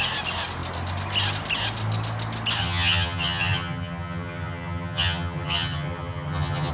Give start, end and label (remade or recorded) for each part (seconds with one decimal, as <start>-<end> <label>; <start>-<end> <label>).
0.0-2.6 recorded; 2.6-6.7 remade